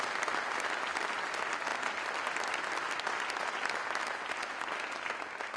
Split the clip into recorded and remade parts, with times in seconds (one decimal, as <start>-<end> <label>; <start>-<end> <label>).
0.0-5.6 recorded